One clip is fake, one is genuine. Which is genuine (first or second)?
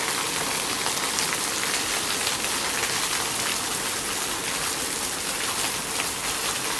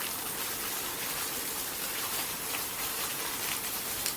first